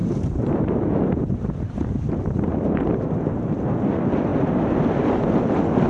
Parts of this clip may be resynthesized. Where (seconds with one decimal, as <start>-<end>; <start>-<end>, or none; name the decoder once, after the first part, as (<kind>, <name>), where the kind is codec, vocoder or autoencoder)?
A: 0.0-3.5 (vocoder, BigVGAN v2)